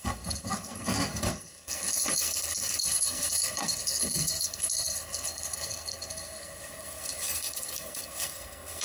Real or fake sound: fake